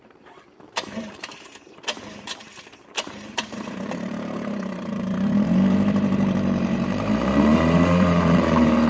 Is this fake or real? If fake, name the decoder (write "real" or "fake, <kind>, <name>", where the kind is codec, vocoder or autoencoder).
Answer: fake, vocoder, BigVGAN v2